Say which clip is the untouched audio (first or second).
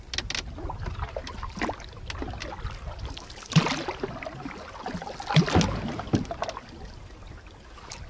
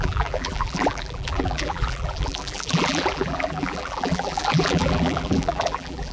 first